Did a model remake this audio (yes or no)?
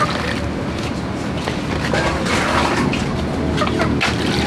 no